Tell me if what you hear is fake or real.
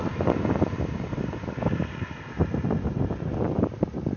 real